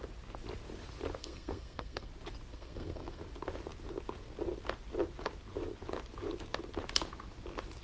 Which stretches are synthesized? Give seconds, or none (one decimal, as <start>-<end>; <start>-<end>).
1.2-2.1; 2.5-3.2